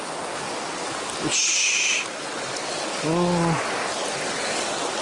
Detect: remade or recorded recorded